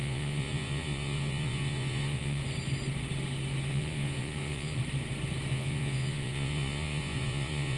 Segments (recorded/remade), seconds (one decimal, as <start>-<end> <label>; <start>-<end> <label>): 0.0-2.4 remade; 2.4-3.7 recorded; 3.7-4.8 remade; 4.8-5.5 recorded; 5.5-7.8 remade